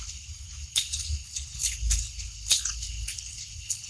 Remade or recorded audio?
remade